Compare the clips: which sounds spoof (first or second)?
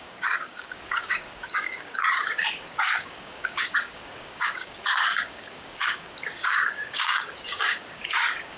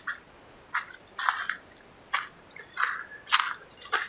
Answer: first